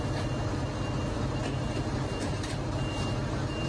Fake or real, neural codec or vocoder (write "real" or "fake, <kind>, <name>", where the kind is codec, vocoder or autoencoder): real